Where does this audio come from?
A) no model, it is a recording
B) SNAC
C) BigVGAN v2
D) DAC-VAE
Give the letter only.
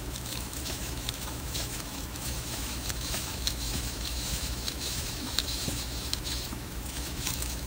D